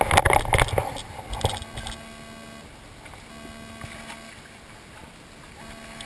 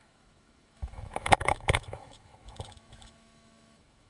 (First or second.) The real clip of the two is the first